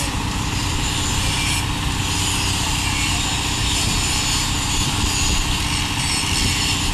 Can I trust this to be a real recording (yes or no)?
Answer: no